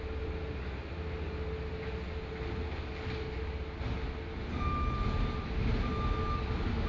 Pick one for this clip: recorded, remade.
recorded